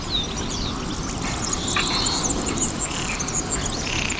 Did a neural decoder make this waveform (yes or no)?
no